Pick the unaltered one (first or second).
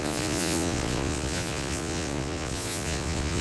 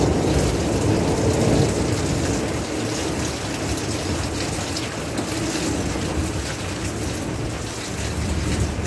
second